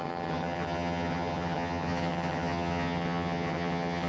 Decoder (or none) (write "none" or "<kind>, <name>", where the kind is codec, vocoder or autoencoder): vocoder, HiFi-GAN